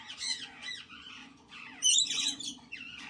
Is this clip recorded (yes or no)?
no